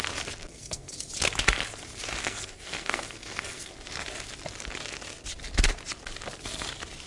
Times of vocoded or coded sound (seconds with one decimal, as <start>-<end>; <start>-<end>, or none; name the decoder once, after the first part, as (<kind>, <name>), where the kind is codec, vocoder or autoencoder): 0.4-1.1 (codec, SNAC); 2.2-3.7